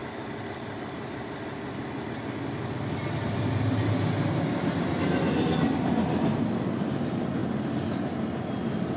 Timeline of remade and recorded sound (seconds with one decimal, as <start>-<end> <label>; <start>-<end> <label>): 0.0-9.0 recorded